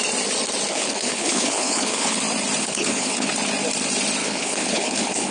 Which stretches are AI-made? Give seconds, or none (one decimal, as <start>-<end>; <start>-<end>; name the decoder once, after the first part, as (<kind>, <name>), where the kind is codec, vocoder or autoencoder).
0.7-2.2 (codec, HILCodec); 2.6-3.3; 4.2-5.3